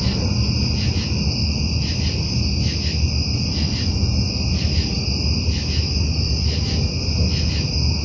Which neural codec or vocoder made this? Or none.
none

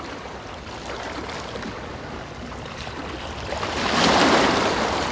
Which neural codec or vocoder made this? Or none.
none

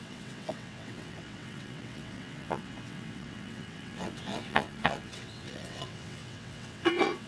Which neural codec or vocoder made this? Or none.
vocoder, WaveNeXt